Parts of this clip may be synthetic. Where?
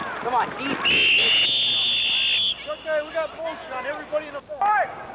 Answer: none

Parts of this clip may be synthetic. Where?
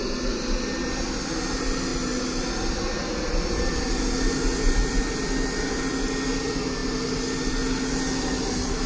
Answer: none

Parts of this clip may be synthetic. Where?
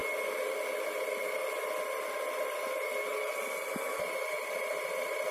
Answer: none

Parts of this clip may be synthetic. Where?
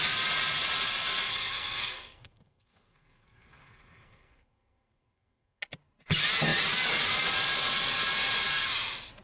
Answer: 1.3-5.6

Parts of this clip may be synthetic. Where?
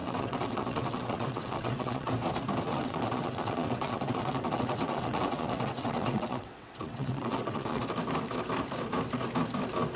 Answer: 0.0-2.1; 2.7-7.8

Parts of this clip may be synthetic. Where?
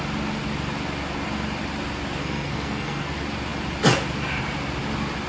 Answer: 2.2-3.1